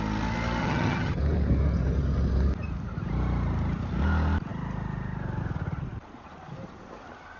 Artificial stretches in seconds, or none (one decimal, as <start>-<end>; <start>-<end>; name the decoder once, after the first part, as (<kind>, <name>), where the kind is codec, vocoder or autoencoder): 0.6-1.2 (vocoder, HiFi-GAN)